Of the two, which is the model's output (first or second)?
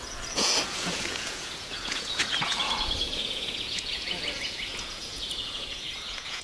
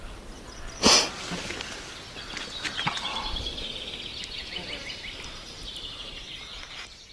first